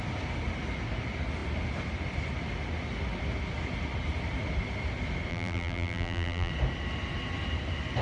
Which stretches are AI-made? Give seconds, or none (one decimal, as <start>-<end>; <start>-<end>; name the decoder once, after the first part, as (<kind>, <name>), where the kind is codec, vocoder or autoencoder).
5.3-6.5 (vocoder, BigVGAN v2)